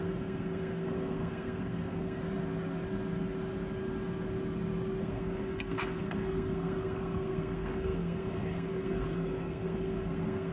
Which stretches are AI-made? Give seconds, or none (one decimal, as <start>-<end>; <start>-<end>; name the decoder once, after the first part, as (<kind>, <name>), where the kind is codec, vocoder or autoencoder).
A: 0.0-2.2 (codec, SNAC); 5.0-10.5